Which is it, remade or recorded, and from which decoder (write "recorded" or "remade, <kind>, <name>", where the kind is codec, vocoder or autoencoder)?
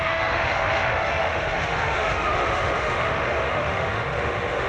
remade, autoencoder, DAC-VAE